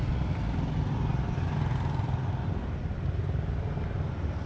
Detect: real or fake real